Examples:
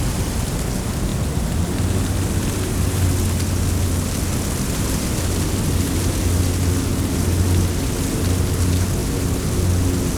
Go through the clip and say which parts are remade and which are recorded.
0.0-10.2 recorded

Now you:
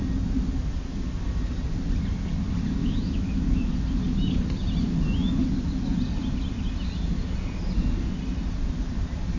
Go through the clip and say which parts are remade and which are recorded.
0.0-2.8 recorded; 2.8-3.7 remade; 3.7-9.4 recorded

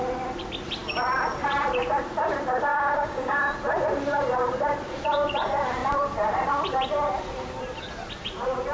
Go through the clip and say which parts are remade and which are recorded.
0.0-2.7 recorded; 2.7-3.4 remade; 3.4-8.7 recorded

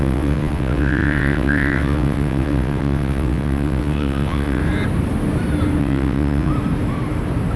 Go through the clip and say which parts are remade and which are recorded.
0.0-4.6 remade; 4.6-5.8 recorded; 5.8-6.5 remade; 6.5-7.6 recorded

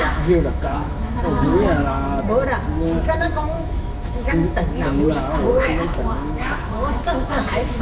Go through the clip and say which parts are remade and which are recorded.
0.0-1.8 remade; 1.8-3.0 recorded; 3.0-7.8 remade

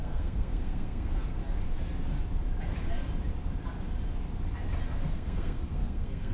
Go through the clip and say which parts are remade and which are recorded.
0.0-1.4 remade; 1.4-5.1 recorded; 5.1-6.3 remade